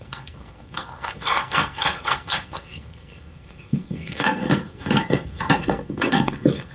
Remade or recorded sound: remade